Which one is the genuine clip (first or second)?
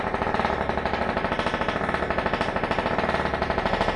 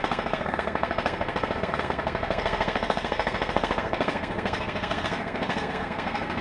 first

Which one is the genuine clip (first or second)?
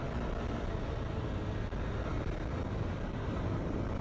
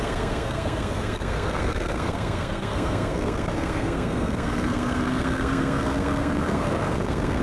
first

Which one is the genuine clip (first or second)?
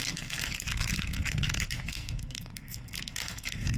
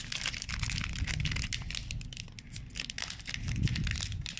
second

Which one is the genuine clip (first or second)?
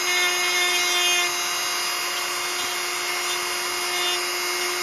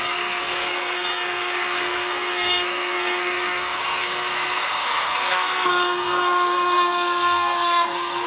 first